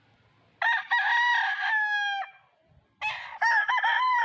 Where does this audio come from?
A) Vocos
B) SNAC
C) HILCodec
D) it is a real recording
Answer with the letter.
D